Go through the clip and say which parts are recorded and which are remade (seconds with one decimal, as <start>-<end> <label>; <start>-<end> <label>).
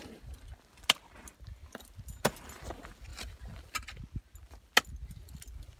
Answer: 0.0-5.8 recorded